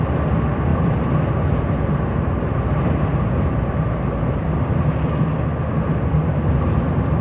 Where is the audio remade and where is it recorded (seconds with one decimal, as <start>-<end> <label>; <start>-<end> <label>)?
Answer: 0.0-0.7 recorded; 0.7-4.9 remade; 4.9-7.2 recorded